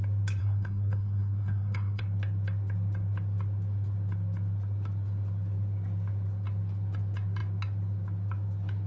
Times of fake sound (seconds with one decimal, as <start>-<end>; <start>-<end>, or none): 0.4-2.0

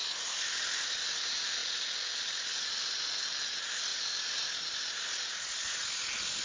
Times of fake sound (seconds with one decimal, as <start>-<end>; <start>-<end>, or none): 0.0-1.2; 1.6-3.1; 3.9-4.7

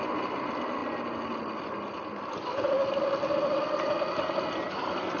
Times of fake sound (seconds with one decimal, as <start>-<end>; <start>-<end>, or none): none

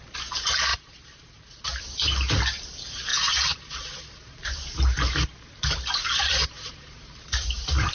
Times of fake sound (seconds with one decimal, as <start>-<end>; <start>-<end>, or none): 0.7-1.8; 3.1-7.9

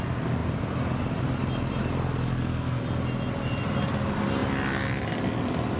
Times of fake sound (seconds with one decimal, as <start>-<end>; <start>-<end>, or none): 2.3-2.8